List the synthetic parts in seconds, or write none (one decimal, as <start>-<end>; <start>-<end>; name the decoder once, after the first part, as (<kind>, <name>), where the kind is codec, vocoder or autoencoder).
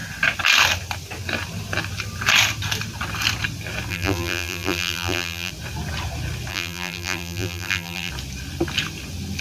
3.9-5.5 (vocoder, BigVGAN v2); 6.5-8.1